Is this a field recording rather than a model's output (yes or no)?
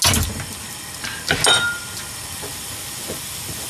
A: yes